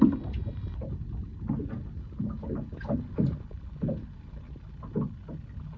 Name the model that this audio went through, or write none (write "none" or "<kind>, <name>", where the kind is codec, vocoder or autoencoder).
none